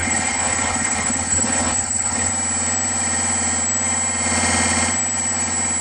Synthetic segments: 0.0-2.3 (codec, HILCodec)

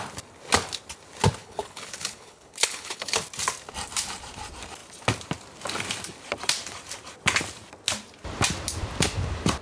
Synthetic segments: 1.4-3.2 (codec, HILCodec)

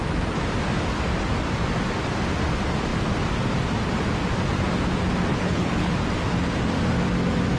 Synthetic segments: 5.3-5.9 (codec, HILCodec)

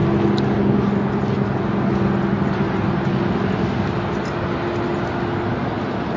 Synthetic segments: none

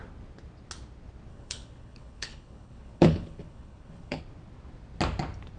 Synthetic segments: 1.3-4.2 (codec, HILCodec)

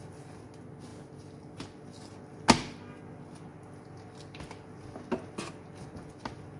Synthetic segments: none